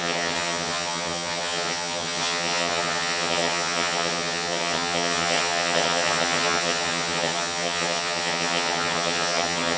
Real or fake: fake